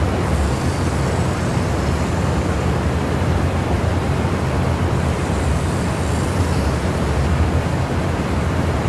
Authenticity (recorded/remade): recorded